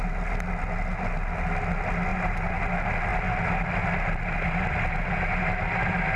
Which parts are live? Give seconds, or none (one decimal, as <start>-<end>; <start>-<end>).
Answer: 0.0-2.1; 2.6-6.2